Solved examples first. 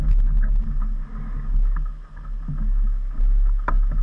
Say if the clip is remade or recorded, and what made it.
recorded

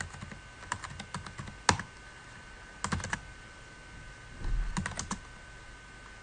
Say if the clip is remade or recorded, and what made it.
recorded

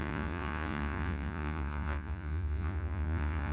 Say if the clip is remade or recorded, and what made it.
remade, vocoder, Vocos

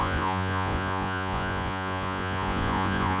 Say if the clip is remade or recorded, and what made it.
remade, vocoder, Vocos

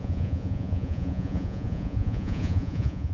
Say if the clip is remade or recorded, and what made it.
remade, vocoder, Vocos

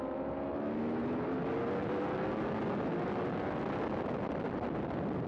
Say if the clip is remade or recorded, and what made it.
recorded